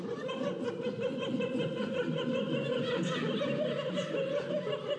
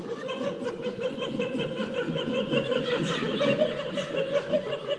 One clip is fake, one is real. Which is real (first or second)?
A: first